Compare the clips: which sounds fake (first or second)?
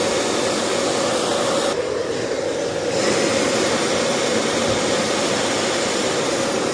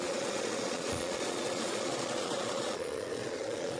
second